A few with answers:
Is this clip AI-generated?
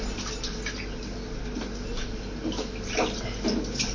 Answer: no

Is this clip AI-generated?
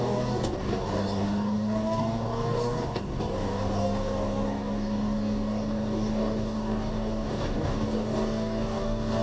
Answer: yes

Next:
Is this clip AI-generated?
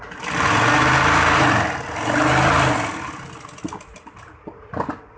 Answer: no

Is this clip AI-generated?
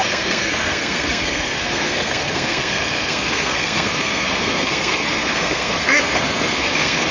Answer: yes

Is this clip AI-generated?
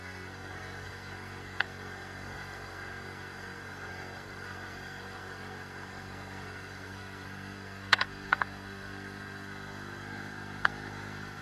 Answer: yes